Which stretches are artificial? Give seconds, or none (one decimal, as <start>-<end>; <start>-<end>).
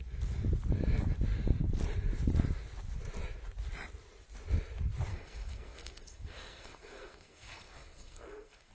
5.1-8.7